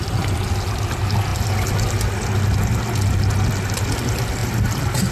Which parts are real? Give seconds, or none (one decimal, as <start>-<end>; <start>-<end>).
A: 0.0-5.1